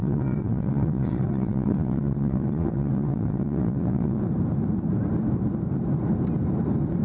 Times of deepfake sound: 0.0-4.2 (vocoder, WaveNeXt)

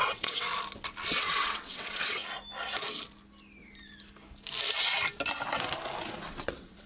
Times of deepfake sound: 0.0-0.5 (vocoder, WaveNeXt); 1.1-2.2; 6.3-6.9

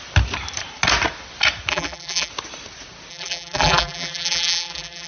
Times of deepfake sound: 1.7-2.3 (vocoder, BigVGAN v2); 3.1-5.1

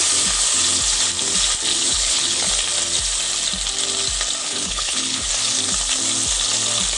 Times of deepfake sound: 1.7-2.5 (codec, HILCodec); 4.4-5.3

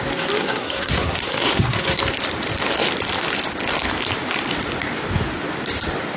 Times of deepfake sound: 0.4-2.0 (codec, SNAC)

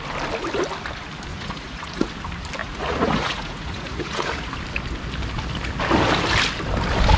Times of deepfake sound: 1.3-2.1 (vocoder, Vocos); 2.6-4.5